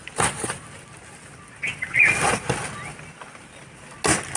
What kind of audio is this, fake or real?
real